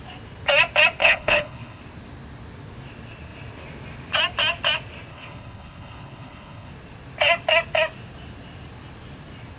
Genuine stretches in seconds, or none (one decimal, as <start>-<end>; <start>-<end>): 0.0-1.0; 1.8-5.1; 6.7-9.6